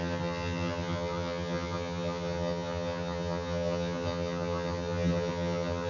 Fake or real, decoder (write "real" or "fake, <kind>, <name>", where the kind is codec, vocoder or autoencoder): fake, vocoder, HiFi-GAN